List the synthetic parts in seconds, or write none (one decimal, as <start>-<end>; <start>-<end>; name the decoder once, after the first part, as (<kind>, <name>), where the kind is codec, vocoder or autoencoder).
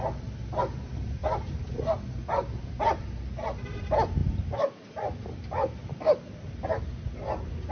none